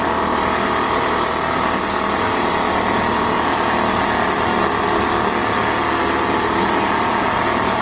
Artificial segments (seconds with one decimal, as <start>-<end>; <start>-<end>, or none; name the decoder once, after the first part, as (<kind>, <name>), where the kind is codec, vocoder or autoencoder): none